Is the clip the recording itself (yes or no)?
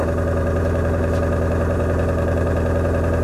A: no